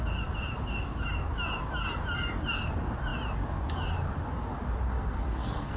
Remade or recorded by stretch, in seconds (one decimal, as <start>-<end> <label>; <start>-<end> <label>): 0.0-4.9 recorded; 4.9-5.8 remade